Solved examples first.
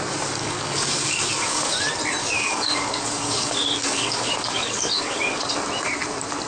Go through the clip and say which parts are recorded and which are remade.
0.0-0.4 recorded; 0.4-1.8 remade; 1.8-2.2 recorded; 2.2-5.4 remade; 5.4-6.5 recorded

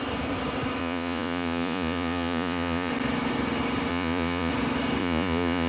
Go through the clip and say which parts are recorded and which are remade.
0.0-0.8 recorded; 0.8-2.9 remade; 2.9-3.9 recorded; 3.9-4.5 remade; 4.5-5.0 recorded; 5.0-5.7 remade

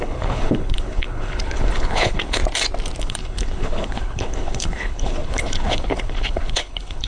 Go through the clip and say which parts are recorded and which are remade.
0.0-2.4 remade; 2.4-3.0 recorded; 3.0-7.1 remade